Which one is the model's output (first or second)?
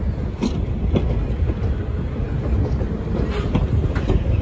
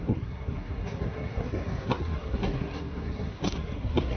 second